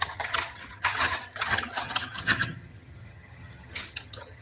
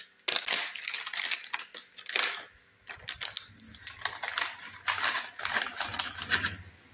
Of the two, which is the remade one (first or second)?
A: first